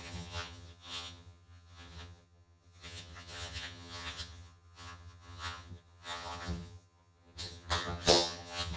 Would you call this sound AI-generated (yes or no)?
yes